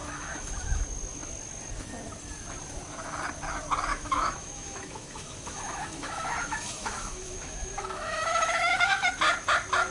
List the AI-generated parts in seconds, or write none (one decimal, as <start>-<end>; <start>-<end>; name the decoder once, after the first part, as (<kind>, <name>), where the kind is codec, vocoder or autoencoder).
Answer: 0.0-0.8 (autoencoder, DAC-VAE); 3.9-9.1